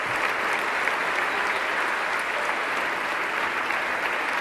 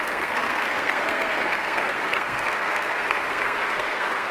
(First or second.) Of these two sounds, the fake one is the second